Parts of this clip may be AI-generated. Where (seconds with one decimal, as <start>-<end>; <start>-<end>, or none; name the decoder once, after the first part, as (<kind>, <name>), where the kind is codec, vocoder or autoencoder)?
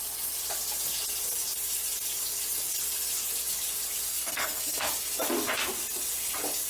4.1-4.9 (codec, SNAC)